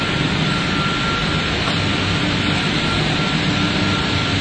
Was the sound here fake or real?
real